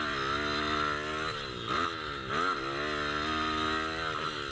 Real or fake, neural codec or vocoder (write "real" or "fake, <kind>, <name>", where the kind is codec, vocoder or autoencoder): real